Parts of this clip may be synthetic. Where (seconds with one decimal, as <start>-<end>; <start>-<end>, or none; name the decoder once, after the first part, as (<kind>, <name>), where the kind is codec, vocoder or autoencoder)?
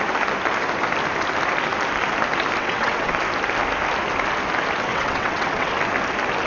2.6-3.2 (vocoder, WaveNeXt); 4.9-5.7